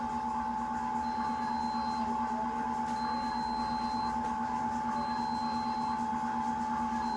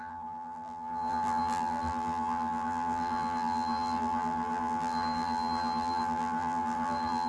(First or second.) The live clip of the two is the first